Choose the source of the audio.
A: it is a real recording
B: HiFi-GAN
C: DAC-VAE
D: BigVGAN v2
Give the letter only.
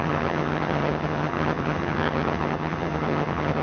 B